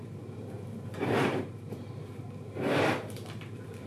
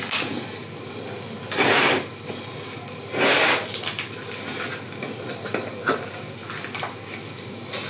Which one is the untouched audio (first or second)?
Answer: second